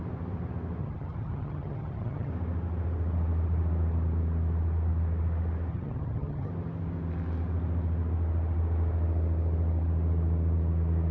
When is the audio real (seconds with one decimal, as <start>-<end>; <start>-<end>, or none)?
0.0-0.8; 2.3-5.7; 6.5-11.1